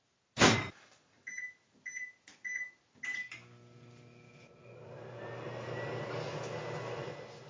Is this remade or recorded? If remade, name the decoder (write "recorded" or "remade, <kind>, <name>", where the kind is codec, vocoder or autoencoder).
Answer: recorded